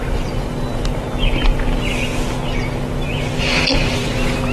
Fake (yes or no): no